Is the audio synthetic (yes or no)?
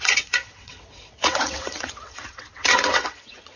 yes